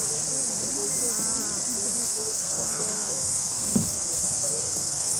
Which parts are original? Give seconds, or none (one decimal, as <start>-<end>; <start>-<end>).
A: 0.0-2.0